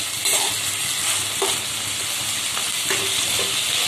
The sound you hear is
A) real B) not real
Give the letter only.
A